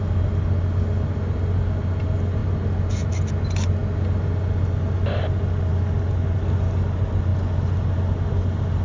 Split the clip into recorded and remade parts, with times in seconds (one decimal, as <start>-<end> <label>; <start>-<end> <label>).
0.0-8.8 recorded